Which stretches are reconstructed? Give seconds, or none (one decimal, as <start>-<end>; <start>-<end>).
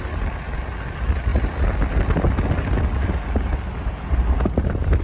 none